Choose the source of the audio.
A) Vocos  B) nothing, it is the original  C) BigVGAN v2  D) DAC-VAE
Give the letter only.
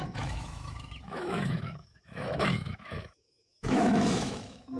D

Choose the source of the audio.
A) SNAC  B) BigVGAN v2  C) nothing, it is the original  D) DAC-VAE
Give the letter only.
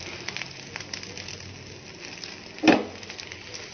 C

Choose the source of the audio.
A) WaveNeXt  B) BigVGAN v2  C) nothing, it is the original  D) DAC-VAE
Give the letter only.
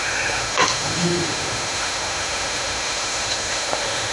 D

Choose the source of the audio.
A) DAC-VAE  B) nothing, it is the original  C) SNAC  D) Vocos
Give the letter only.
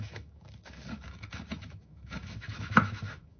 A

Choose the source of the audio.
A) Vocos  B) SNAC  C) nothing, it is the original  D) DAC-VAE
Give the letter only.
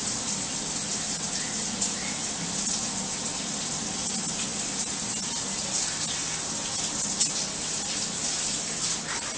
C